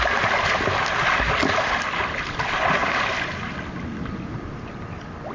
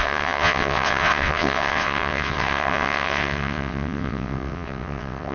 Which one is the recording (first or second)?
first